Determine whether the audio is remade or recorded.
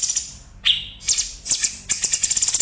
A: recorded